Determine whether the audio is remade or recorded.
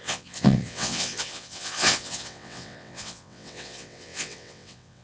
remade